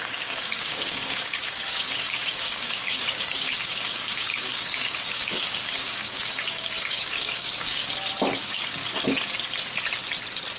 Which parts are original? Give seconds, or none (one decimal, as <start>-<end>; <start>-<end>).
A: 7.8-8.4; 8.8-10.6